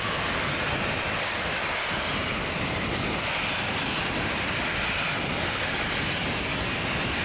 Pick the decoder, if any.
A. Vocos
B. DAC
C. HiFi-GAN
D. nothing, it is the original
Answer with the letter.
D